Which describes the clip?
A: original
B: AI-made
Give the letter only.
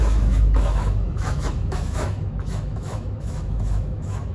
B